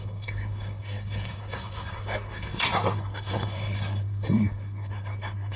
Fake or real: fake